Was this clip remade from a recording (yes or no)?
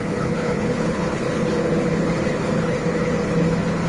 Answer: yes